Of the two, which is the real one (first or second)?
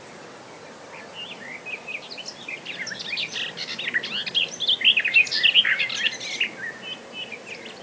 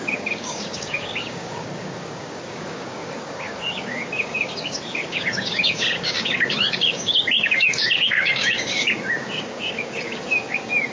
first